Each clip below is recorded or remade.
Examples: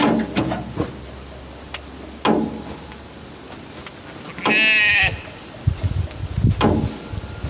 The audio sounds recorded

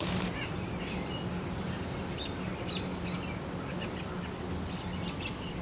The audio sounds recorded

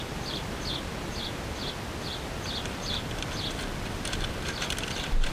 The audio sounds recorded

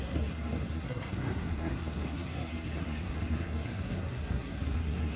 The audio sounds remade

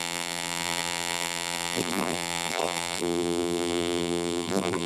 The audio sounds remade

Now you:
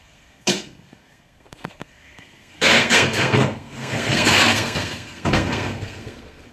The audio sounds remade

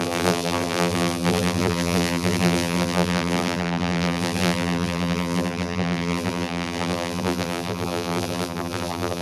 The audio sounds remade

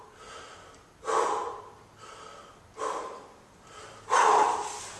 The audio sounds recorded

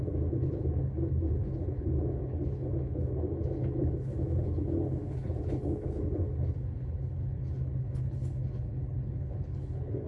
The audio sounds remade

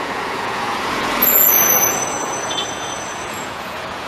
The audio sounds remade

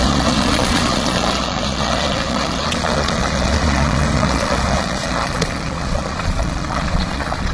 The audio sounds remade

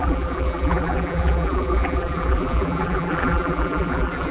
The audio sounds remade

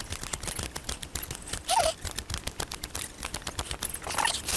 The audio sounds recorded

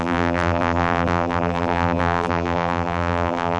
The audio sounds remade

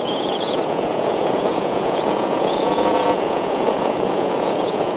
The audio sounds remade